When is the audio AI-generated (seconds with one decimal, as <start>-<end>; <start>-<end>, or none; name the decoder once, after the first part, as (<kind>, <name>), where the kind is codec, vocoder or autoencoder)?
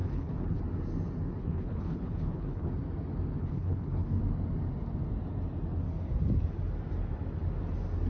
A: 0.0-0.6 (codec, HILCodec); 1.4-2.7; 3.4-4.2